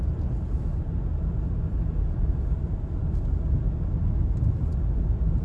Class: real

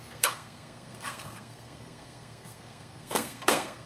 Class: fake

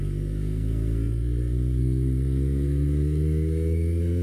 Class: fake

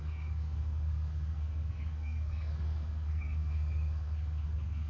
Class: fake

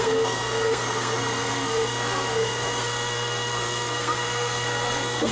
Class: fake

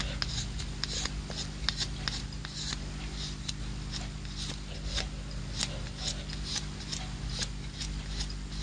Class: real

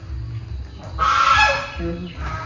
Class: real